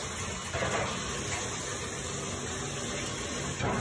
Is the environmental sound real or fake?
real